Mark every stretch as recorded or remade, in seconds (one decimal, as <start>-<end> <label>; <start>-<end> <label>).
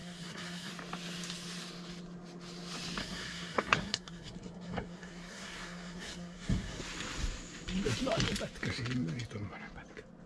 0.0-0.7 remade; 0.7-3.0 recorded; 3.0-6.8 remade; 6.8-10.3 recorded